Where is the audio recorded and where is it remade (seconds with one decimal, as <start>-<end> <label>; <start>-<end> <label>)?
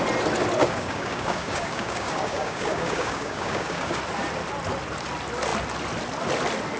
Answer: 0.0-0.6 recorded; 0.6-4.0 remade; 4.0-6.8 recorded